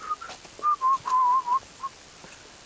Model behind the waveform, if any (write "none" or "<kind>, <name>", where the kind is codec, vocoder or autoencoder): none